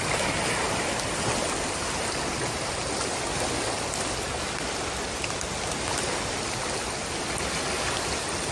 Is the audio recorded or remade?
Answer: recorded